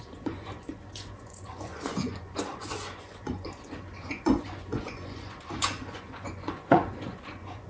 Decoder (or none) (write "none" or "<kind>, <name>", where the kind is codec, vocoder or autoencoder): vocoder, Vocos